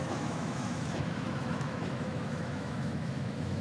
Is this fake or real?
fake